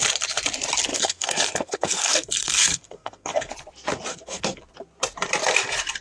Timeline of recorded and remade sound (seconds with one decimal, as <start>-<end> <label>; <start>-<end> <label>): 0.0-0.9 recorded; 0.9-3.5 remade; 3.5-4.1 recorded; 4.1-4.6 remade; 4.6-6.0 recorded